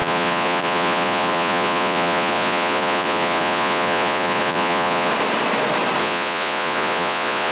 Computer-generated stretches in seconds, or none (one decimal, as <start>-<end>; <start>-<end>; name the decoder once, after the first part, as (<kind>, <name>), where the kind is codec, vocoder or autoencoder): 0.0-5.1 (vocoder, Vocos); 6.0-7.5